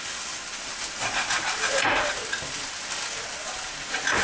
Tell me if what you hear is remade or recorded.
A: recorded